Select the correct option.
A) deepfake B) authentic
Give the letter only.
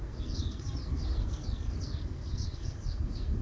A